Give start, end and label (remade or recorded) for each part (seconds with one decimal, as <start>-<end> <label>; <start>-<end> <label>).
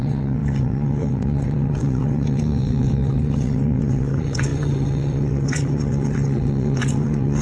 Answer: 0.0-7.4 remade